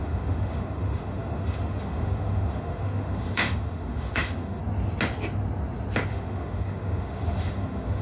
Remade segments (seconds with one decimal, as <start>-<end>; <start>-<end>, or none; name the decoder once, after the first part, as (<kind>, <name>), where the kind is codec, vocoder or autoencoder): 0.0-4.6 (autoencoder, DAC-VAE); 6.1-8.0